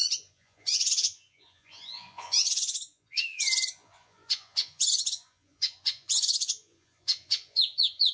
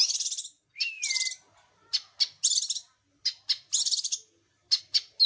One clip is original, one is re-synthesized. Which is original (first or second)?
second